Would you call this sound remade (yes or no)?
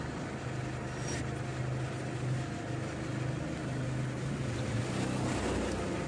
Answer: no